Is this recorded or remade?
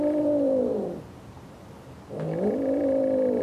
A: recorded